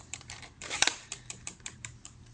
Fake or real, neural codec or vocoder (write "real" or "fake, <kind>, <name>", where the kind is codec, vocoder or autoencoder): fake, vocoder, BigVGAN v2